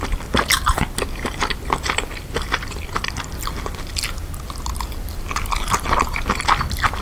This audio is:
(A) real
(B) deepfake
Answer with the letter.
A